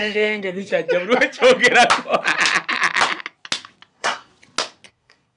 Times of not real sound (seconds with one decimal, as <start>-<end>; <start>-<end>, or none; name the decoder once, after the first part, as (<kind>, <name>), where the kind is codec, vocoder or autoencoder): 0.0-0.7 (codec, SNAC); 3.9-4.3; 4.9-5.4